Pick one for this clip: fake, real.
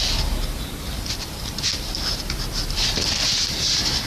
fake